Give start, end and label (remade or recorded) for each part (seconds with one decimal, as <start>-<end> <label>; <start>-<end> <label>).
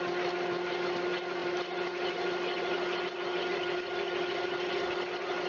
0.0-5.5 recorded